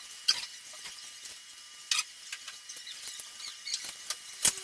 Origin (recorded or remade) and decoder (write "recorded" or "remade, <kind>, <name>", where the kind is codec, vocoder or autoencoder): recorded